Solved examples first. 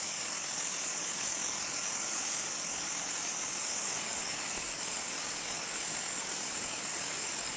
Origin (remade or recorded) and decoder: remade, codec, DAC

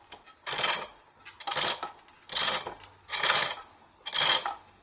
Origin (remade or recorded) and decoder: recorded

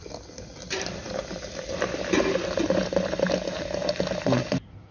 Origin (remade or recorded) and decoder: recorded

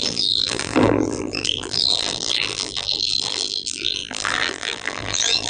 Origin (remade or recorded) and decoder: remade, vocoder, BigVGAN v2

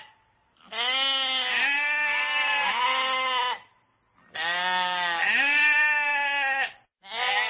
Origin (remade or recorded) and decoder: recorded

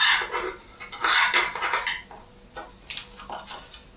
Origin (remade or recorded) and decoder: recorded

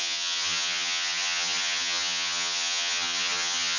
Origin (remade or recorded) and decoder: remade, vocoder, HiFi-GAN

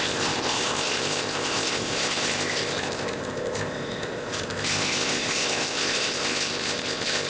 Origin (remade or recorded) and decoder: remade, codec, ZipCodec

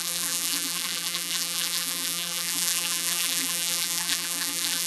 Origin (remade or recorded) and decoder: remade, vocoder, BigVGAN v2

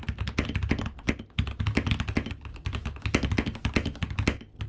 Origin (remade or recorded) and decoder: recorded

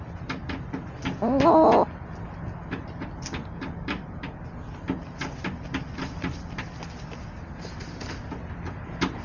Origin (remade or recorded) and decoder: recorded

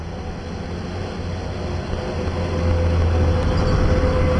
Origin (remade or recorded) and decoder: recorded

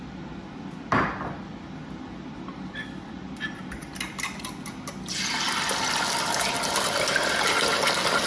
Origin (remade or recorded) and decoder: recorded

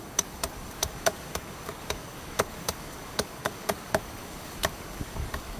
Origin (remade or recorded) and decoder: remade, codec, DAC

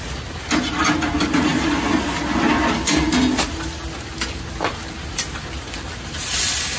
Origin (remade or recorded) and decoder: recorded